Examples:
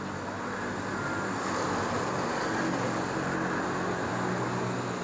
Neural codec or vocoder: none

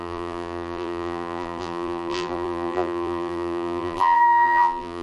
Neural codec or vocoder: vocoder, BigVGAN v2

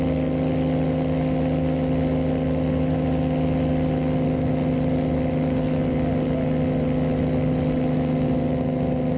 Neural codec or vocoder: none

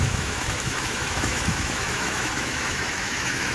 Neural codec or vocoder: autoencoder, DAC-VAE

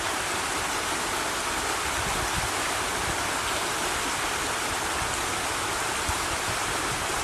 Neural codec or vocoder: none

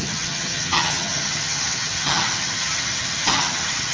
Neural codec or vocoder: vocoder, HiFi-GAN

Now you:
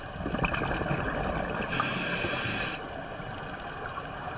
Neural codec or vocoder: none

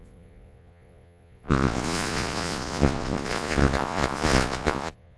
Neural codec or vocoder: vocoder, Vocos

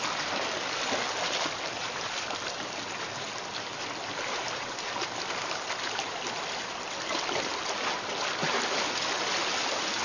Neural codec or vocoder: none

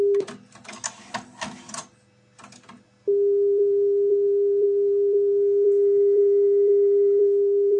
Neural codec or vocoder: none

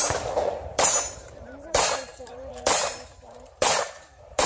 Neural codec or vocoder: vocoder, BigVGAN v2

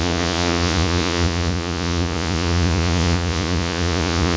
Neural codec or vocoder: vocoder, Vocos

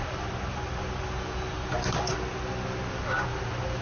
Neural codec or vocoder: none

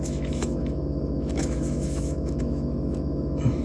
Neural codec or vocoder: autoencoder, DAC-VAE